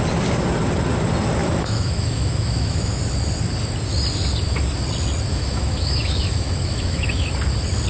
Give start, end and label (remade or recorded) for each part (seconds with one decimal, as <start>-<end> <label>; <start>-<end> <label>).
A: 0.0-1.4 recorded; 1.4-3.0 remade; 3.0-5.3 recorded; 5.3-7.3 remade; 7.3-7.9 recorded